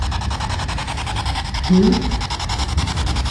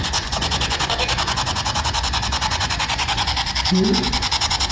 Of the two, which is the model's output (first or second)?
second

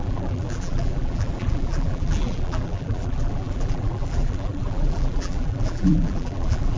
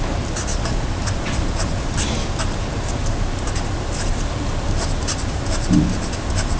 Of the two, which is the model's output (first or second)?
first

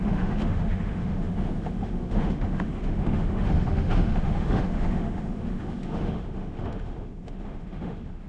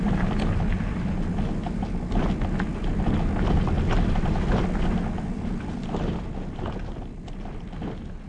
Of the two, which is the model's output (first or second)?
first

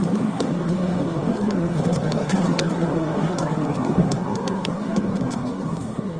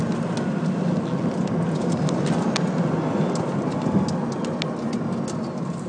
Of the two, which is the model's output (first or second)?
first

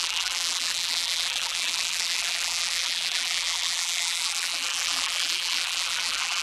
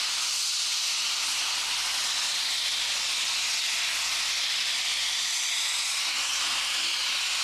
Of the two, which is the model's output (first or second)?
first